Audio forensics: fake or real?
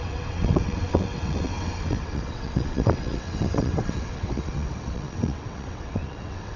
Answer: fake